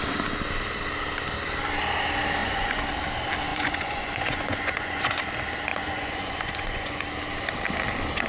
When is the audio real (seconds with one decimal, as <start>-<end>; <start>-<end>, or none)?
0.0-2.4; 2.9-3.5; 5.2-5.7; 7.0-8.3